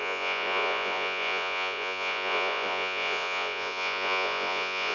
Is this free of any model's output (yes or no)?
no